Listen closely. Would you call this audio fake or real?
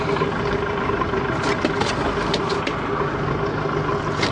real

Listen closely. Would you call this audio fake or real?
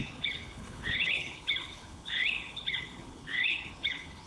fake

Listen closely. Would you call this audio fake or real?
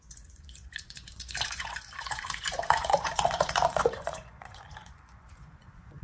fake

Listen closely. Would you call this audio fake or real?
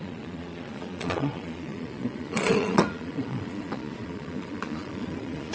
fake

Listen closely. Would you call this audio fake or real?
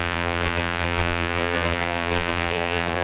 fake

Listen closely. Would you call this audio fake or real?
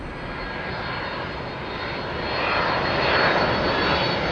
real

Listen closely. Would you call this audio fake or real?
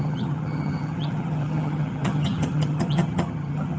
fake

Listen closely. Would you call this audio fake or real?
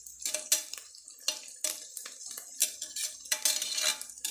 real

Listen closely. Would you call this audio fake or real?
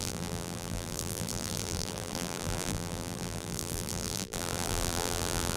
fake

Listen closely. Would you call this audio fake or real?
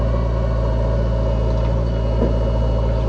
real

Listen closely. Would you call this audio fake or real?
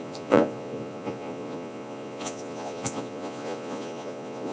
fake